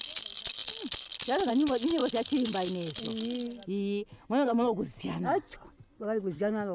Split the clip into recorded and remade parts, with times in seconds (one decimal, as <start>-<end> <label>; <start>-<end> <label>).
0.0-6.7 recorded